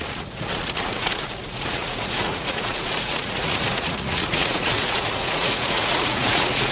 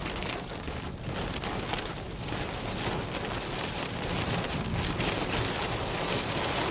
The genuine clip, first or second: second